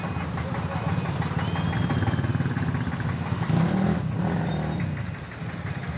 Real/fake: real